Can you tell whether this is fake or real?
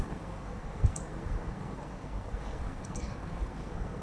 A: fake